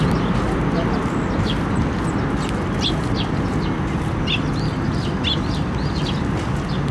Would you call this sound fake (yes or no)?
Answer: no